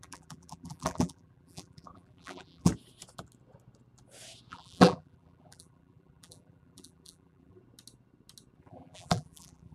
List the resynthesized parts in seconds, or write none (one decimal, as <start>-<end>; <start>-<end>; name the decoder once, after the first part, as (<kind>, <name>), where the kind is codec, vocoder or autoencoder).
0.0-2.7 (vocoder, BigVGAN v2); 4.5-7.6; 8.6-9.7